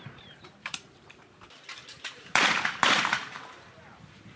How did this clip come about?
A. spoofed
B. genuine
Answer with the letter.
A